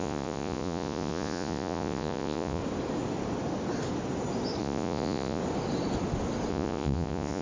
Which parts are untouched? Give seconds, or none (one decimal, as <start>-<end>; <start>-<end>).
2.6-4.6; 5.4-6.5